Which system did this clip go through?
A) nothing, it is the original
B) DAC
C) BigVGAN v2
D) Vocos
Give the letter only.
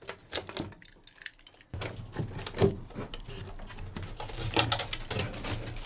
A